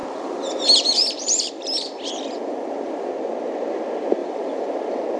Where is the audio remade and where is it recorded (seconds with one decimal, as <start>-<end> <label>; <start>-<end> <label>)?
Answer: 0.0-3.1 remade; 3.1-4.2 recorded; 4.2-5.2 remade